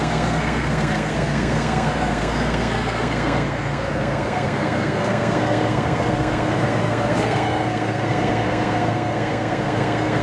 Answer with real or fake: fake